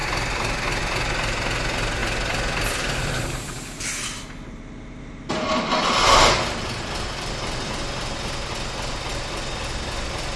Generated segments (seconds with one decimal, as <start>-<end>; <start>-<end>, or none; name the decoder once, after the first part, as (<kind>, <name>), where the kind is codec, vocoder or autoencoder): none